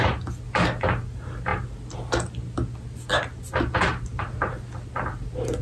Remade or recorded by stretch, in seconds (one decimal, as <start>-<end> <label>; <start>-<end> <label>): 0.0-5.6 recorded